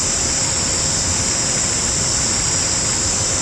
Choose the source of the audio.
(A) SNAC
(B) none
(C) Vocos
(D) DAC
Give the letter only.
B